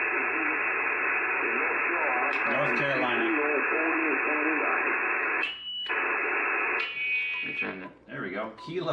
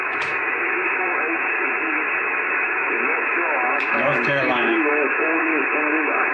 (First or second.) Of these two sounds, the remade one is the second